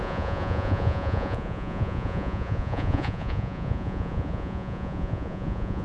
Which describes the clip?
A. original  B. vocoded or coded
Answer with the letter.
B